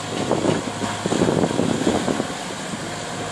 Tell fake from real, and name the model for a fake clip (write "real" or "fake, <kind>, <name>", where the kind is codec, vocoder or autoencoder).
real